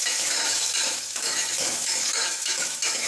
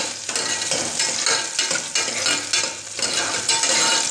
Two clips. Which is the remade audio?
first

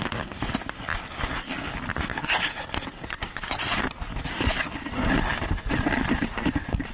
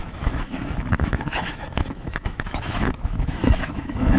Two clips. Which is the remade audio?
second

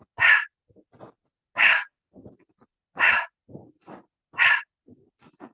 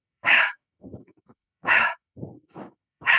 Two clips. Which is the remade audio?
second